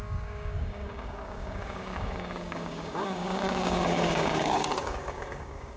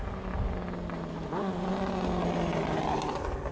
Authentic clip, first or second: second